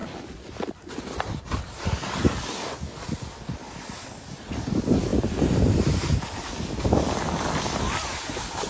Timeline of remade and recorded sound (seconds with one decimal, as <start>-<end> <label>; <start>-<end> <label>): 0.0-8.7 recorded